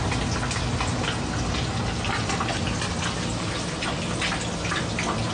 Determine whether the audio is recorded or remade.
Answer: recorded